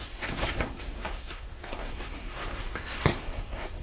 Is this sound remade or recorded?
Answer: remade